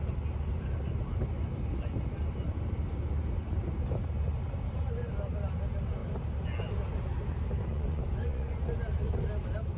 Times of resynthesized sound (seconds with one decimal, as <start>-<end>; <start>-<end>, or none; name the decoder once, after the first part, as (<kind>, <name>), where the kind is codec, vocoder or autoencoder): 7.7-8.7 (vocoder, Vocos)